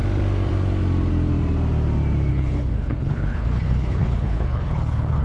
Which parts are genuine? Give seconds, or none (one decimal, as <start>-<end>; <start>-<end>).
0.0-2.3